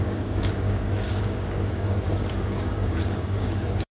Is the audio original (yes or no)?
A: no